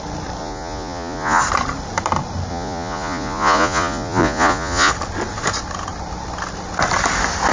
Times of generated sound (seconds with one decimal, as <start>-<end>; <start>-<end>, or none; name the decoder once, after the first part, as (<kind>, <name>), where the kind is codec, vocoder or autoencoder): 0.4-1.4 (vocoder, Vocos); 2.5-4.9